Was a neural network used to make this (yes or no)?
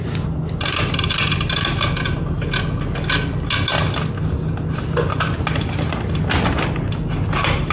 no